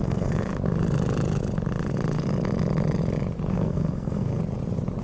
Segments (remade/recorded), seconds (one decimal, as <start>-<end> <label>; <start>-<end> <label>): 0.0-0.5 remade; 0.5-3.5 recorded; 3.5-4.4 remade; 4.4-5.0 recorded